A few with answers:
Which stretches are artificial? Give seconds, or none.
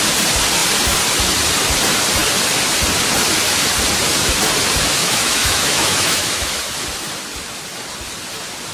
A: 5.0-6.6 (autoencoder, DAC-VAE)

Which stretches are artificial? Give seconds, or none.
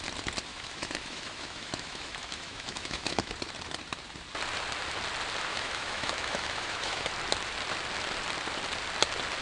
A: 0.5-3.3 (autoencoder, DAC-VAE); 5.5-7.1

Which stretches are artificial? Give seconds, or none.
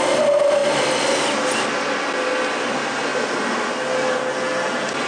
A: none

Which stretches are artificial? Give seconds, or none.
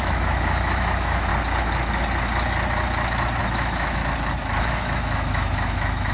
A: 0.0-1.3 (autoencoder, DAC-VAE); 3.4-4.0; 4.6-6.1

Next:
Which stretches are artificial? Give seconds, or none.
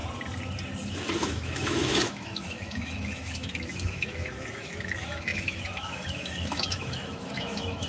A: 1.2-7.9 (autoencoder, DAC-VAE)